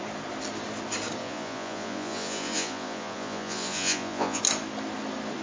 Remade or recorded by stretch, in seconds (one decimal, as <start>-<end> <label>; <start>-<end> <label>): 0.0-1.2 recorded; 1.2-4.4 remade; 4.4-5.4 recorded